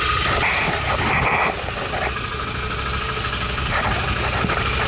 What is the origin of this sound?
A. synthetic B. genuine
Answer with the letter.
B